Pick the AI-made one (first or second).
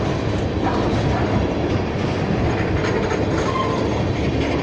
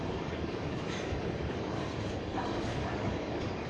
second